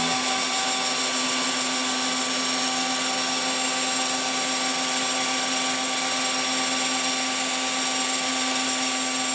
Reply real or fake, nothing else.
real